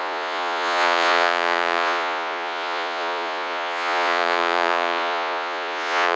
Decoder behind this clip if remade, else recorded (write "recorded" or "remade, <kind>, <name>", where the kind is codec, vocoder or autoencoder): remade, vocoder, Vocos